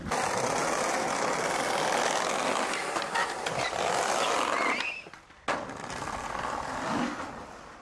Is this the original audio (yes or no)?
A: yes